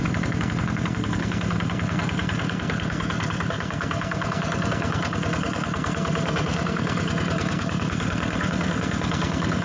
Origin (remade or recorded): remade